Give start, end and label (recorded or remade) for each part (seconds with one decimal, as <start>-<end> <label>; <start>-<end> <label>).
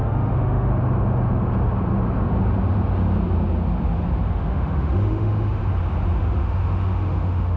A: 0.0-0.7 remade; 0.7-4.3 recorded; 4.3-5.6 remade; 5.6-6.2 recorded; 6.2-7.6 remade